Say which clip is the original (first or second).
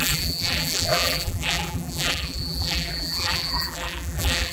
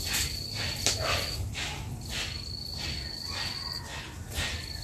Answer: second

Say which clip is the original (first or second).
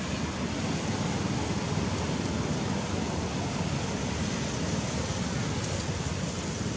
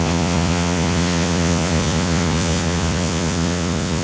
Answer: first